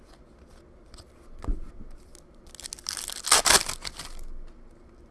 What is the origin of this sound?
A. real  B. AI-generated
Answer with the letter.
A